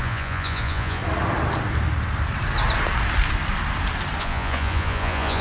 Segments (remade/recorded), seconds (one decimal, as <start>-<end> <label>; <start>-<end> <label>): 0.0-1.0 remade; 1.0-4.2 recorded; 4.2-5.4 remade

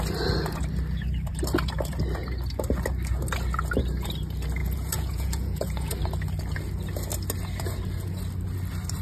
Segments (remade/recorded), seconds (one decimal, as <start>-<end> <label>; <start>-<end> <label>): 0.0-4.6 recorded; 4.6-5.9 remade; 5.9-9.0 recorded